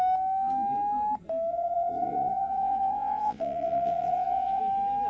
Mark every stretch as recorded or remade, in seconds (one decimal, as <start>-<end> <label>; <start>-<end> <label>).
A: 0.0-1.5 recorded; 1.5-4.6 remade; 4.6-5.1 recorded